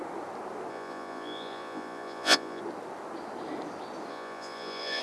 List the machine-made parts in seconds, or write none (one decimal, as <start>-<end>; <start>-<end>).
0.7-2.6; 4.1-5.0